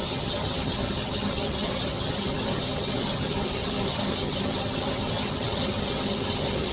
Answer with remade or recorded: remade